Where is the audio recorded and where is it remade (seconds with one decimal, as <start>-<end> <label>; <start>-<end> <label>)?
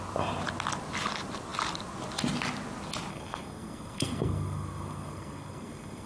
0.0-3.1 recorded; 3.1-6.1 remade